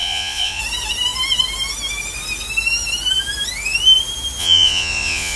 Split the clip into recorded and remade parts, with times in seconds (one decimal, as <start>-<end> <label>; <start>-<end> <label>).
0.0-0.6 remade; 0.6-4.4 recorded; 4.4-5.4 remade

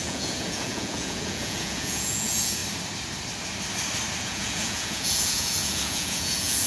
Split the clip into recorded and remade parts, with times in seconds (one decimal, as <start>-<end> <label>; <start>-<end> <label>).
0.0-2.6 remade; 2.6-4.2 recorded; 4.2-6.7 remade

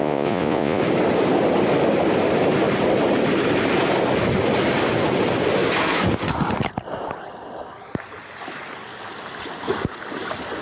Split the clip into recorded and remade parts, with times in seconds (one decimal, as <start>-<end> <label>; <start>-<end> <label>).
0.0-0.8 remade; 0.8-10.6 recorded

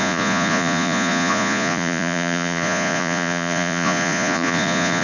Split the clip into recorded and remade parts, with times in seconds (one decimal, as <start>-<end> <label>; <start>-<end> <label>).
0.0-5.0 remade

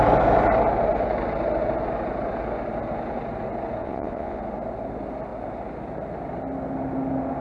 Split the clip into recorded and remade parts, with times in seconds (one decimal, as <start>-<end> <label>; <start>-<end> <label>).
0.0-3.8 recorded; 3.8-4.4 remade; 4.4-7.4 recorded

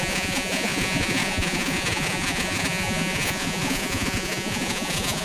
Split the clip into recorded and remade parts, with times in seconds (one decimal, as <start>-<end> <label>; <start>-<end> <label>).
0.0-5.2 remade

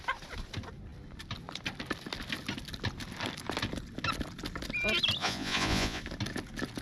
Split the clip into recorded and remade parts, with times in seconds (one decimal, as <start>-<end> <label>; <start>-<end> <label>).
0.0-5.2 recorded; 5.2-6.0 remade; 6.0-6.8 recorded